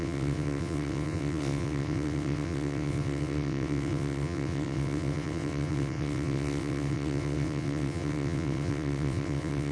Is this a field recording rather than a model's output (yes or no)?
no